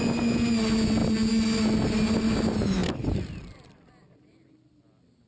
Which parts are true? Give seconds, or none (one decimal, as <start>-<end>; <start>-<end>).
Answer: 0.0-2.8; 4.7-5.3